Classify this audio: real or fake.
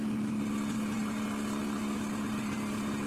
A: real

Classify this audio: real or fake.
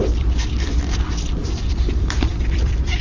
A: fake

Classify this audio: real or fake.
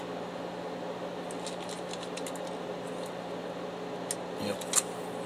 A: real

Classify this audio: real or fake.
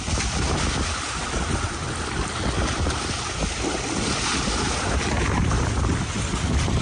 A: real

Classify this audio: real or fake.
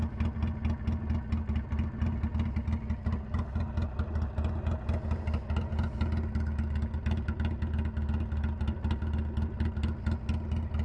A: real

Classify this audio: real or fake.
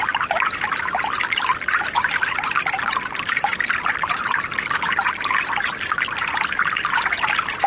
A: real